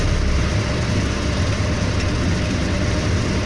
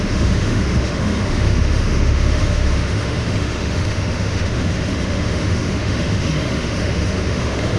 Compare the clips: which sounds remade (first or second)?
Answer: second